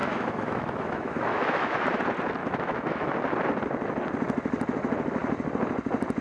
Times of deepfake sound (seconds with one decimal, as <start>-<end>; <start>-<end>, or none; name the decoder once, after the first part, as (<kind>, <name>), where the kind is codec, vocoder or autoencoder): 0.0-1.8 (autoencoder, DAC-VAE); 2.4-3.1